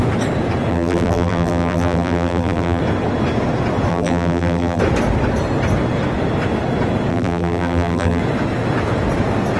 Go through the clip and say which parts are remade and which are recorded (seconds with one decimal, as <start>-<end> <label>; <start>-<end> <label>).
0.0-0.7 recorded; 0.7-2.8 remade; 2.8-3.9 recorded; 3.9-4.8 remade; 4.8-7.1 recorded; 7.1-8.2 remade; 8.2-9.6 recorded